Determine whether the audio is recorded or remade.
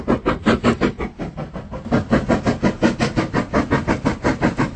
recorded